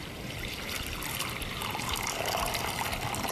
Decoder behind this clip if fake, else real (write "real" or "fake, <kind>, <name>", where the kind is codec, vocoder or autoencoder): real